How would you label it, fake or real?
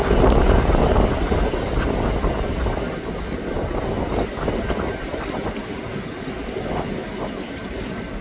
real